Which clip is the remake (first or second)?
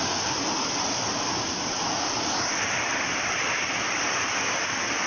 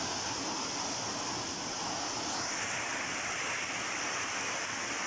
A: first